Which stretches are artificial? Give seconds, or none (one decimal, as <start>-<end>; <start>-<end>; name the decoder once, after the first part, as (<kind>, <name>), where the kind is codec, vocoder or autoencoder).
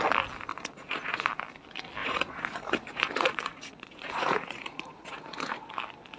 0.5-1.3 (vocoder, Vocos); 2.0-5.7